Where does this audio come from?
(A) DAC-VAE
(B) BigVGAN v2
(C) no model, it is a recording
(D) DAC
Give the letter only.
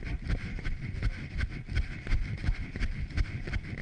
C